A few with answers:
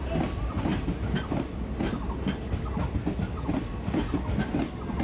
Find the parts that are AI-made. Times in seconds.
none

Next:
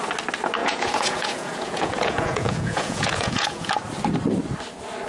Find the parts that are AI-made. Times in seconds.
0.6-3.7 (vocoder, Vocos)